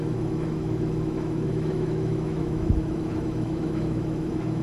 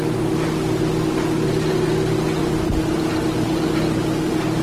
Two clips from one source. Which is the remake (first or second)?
first